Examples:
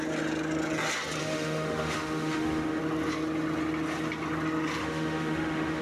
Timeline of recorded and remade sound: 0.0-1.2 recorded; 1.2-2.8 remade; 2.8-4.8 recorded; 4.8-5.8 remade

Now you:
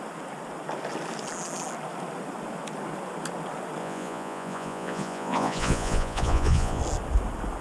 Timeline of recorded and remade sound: 0.0-3.8 recorded; 3.8-6.8 remade; 6.8-7.6 recorded

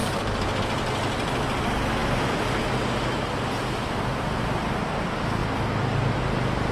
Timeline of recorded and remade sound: 0.0-0.6 remade; 0.6-4.1 recorded; 4.1-5.0 remade; 5.0-6.7 recorded

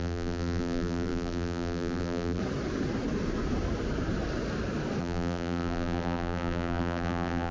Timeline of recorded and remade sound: 0.0-2.4 remade; 2.4-5.0 recorded; 5.0-7.5 remade

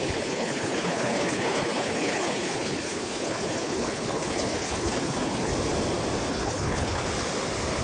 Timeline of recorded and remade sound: 0.0-5.5 remade; 5.5-6.3 recorded; 6.3-7.0 remade; 7.0-7.8 recorded

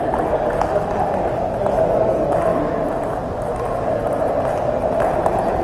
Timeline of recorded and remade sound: 0.0-5.6 recorded

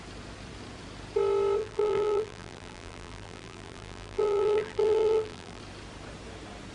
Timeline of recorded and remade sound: 0.0-1.6 recorded; 1.6-5.6 remade; 5.6-6.7 recorded